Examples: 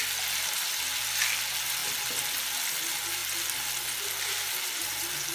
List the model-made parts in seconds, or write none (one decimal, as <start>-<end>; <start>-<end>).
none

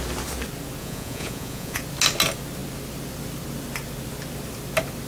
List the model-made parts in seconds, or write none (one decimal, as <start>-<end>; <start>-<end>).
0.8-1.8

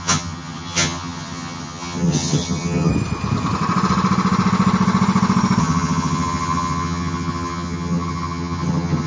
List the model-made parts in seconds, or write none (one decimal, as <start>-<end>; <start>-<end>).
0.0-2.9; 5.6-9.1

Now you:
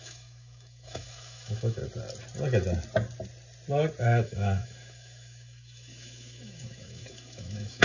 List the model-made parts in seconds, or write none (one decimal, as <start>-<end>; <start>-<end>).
0.0-1.8; 4.0-7.8

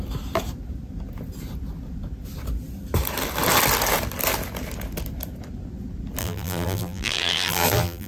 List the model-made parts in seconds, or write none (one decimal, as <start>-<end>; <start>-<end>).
6.2-8.1

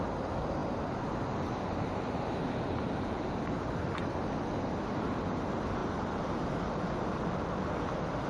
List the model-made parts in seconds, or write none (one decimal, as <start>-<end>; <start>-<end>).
0.6-3.4; 5.8-8.3